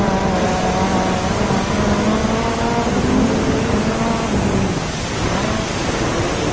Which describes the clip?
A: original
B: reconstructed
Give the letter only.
A